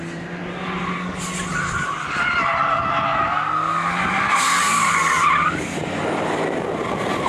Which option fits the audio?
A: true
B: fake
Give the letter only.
A